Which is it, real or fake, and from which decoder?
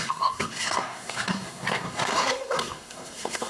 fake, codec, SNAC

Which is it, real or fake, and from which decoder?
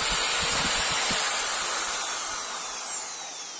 real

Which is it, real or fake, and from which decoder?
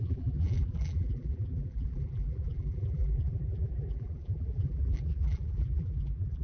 fake, vocoder, BigVGAN v2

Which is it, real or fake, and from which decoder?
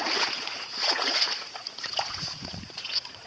fake, vocoder, Vocos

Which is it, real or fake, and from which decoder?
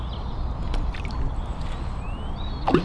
real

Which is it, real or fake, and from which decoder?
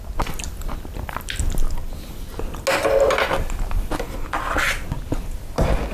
real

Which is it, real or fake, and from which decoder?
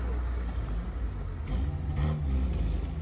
real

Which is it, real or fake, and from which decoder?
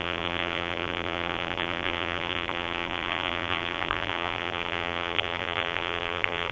fake, vocoder, BigVGAN v2